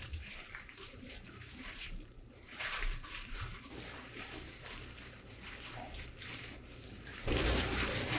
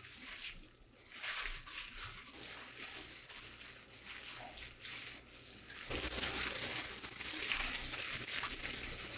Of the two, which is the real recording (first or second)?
second